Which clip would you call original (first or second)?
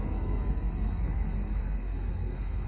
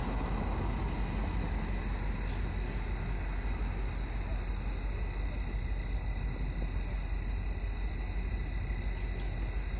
second